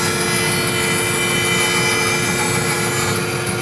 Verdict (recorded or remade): recorded